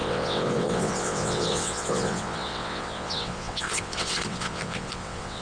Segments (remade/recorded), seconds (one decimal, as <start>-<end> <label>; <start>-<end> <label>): 0.0-5.4 remade

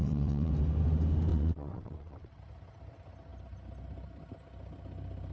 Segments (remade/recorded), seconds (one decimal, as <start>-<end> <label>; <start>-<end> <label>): 0.0-0.5 remade; 0.5-1.3 recorded; 1.3-2.4 remade; 2.4-5.3 recorded